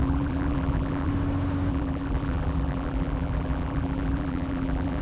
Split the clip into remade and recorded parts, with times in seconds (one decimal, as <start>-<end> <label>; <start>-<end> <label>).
0.0-1.1 remade; 1.1-1.7 recorded; 1.7-5.0 remade